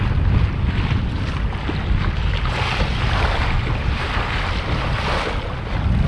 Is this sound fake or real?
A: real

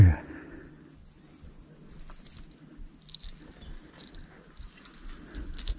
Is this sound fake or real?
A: real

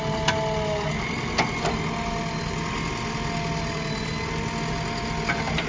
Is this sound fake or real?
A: real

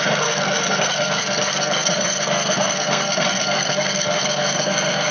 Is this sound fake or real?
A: fake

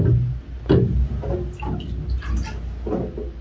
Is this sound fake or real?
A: real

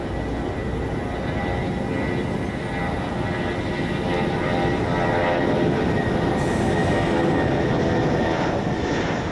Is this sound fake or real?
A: real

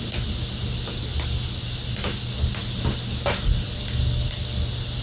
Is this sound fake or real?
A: real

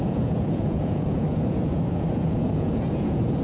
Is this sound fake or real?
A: fake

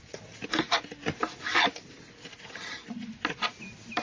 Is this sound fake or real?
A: real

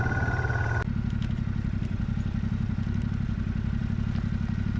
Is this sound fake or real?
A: real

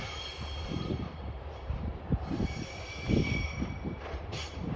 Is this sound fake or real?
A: fake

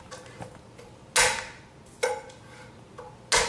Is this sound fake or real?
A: real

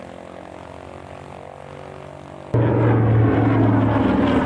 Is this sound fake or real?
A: real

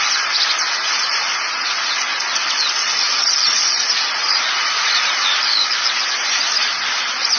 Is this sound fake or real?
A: real